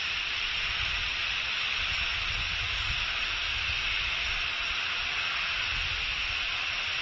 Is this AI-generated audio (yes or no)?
no